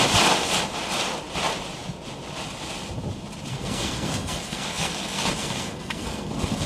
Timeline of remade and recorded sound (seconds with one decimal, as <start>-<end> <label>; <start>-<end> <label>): 0.0-3.5 recorded; 3.5-6.7 remade

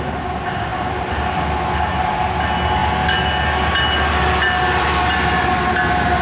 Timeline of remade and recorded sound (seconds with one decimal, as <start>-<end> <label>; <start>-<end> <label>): 0.0-6.2 recorded

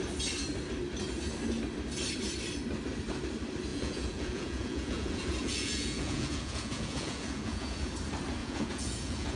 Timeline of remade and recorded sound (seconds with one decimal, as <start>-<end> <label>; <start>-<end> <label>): 0.0-3.7 recorded; 3.7-7.9 remade; 7.9-8.4 recorded; 8.4-9.4 remade

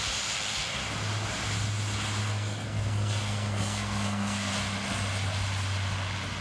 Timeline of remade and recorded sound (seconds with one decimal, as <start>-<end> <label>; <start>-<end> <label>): 0.0-2.2 recorded; 2.2-4.5 remade; 4.5-6.4 recorded

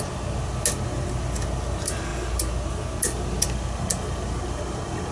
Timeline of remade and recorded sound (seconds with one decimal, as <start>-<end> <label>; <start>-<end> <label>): 0.0-5.1 recorded